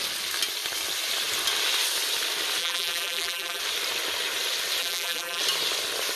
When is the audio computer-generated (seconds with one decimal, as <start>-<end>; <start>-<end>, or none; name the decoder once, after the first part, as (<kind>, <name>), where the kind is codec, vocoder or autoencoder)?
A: 2.6-3.6 (vocoder, BigVGAN v2); 4.8-5.4